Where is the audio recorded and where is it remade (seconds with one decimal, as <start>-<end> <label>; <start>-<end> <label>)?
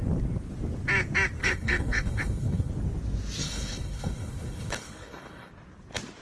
0.0-1.4 recorded; 1.4-2.7 remade; 2.7-3.4 recorded; 3.4-5.5 remade; 5.5-6.2 recorded